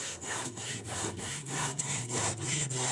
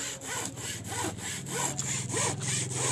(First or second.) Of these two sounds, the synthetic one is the first